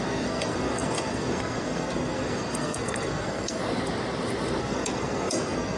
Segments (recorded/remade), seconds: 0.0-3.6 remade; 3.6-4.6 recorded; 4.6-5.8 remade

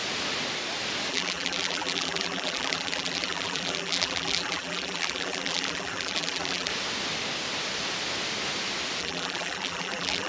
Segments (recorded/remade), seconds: 0.0-1.1 recorded; 1.1-6.7 remade; 6.7-9.0 recorded; 9.0-10.3 remade

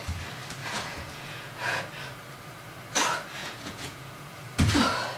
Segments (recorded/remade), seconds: 0.0-0.6 recorded; 0.6-1.8 remade; 1.8-3.4 recorded; 3.4-4.4 remade; 4.4-5.2 recorded

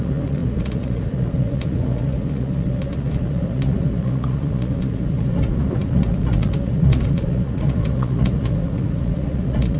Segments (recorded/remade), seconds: 0.0-9.8 remade

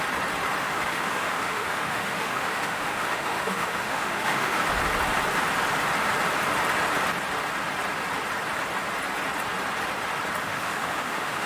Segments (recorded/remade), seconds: 0.0-0.6 recorded; 0.6-4.6 remade; 4.6-10.4 recorded; 10.4-11.5 remade

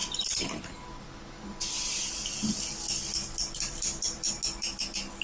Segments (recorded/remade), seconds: 0.0-5.2 recorded

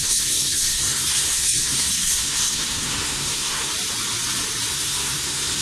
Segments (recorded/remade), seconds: 0.0-3.7 remade; 3.7-4.7 recorded; 4.7-5.6 remade